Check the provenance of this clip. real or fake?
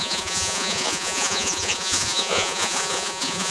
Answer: fake